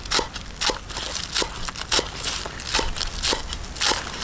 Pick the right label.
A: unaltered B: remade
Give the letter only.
A